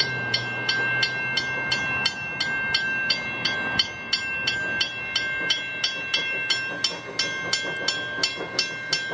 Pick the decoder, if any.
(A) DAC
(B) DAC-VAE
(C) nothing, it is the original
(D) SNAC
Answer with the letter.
C